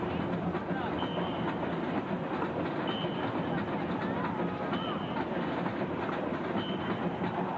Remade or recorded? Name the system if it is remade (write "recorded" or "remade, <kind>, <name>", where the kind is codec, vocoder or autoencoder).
recorded